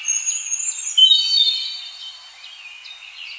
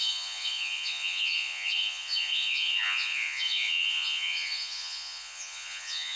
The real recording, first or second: first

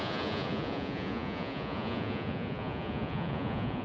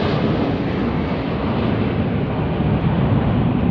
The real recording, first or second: second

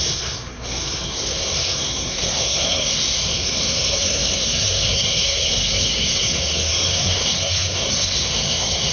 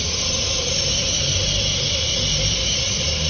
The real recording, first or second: second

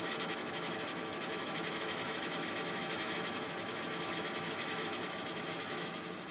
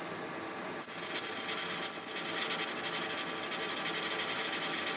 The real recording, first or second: second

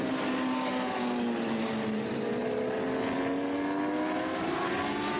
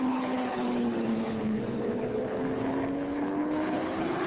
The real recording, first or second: first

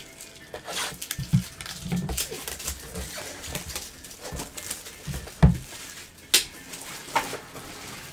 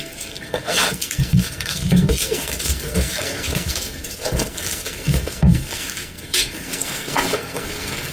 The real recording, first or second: first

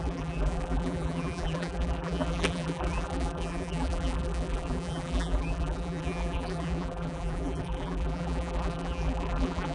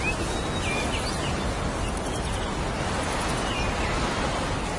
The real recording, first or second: second